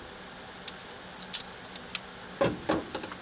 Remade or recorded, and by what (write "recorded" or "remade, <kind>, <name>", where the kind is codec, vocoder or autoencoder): recorded